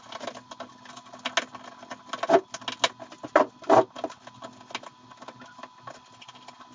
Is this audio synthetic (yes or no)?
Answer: no